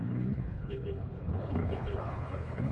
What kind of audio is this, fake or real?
fake